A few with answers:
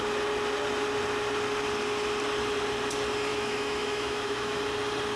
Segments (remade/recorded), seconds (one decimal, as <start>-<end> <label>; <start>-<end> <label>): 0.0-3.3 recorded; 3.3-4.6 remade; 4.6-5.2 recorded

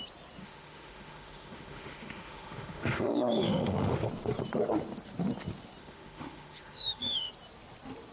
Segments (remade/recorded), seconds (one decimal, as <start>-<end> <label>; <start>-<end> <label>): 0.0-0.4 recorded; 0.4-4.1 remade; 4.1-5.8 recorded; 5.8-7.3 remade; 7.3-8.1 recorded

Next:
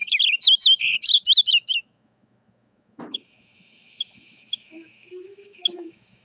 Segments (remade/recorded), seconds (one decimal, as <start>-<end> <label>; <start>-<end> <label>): 0.0-6.2 remade